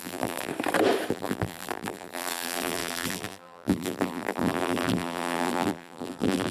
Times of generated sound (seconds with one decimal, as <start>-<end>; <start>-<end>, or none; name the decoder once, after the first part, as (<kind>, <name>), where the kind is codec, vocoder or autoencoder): 0.0-0.5 (vocoder, BigVGAN v2); 1.1-6.5